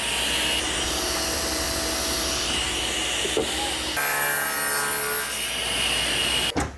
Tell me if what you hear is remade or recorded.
recorded